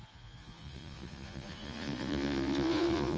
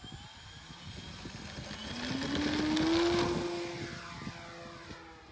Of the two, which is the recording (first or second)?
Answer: second